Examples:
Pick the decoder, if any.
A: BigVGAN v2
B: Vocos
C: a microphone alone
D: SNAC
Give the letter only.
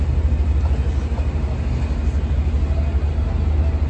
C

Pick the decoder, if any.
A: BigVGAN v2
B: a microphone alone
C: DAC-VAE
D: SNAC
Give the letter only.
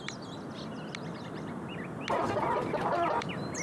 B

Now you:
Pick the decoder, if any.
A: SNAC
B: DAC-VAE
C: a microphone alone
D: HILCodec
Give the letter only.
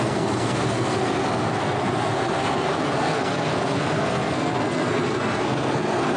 A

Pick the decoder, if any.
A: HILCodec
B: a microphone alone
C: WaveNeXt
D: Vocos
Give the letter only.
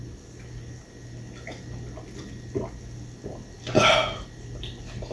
B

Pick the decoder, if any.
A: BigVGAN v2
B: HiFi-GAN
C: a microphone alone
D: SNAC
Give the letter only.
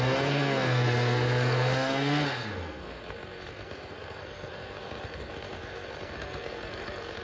D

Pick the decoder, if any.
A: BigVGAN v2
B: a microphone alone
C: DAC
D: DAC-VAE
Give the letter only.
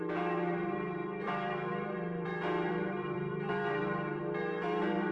A